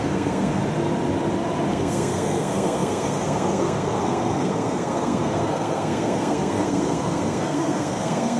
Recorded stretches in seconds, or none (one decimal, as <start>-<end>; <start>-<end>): 0.6-1.7